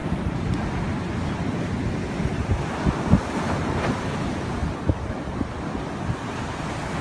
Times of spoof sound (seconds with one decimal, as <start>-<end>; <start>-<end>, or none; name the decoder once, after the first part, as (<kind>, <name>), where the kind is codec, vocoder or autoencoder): none